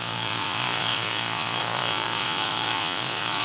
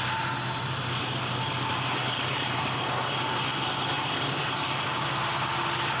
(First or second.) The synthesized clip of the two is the first